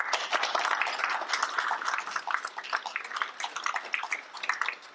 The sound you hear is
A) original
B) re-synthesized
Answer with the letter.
A